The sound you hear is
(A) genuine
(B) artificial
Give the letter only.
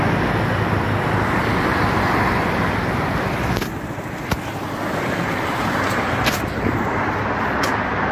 A